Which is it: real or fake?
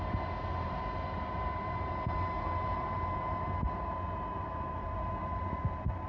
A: fake